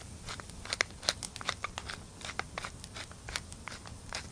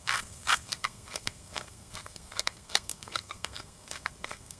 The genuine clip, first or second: first